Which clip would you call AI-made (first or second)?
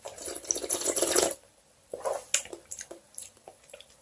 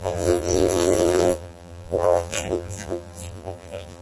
second